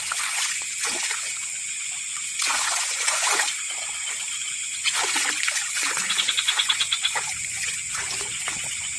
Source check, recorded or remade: remade